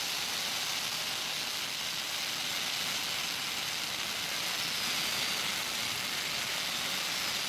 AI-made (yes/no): no